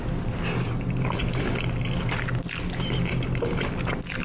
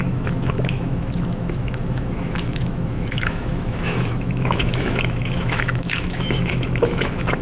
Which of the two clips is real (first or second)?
first